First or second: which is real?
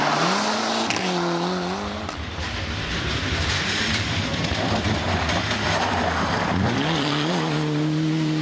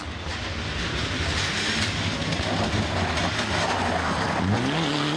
second